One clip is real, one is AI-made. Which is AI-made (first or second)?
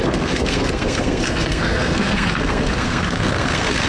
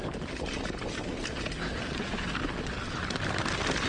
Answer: first